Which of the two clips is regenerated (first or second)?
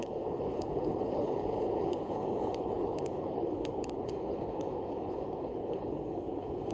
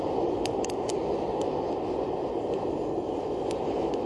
first